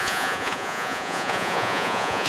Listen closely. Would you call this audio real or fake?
fake